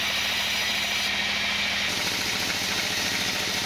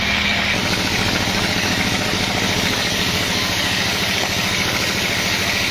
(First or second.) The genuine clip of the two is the first